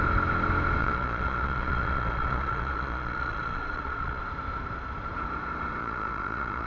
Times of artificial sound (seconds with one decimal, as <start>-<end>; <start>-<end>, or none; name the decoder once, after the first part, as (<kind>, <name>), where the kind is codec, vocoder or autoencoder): 0.8-4.2 (vocoder, Vocos); 5.8-6.7